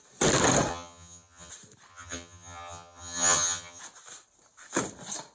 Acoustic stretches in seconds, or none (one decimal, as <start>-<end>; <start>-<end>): 0.0-0.7; 1.5-1.9; 3.8-5.3